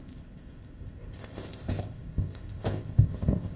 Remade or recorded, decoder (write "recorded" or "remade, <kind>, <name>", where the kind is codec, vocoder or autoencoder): remade, codec, ZipCodec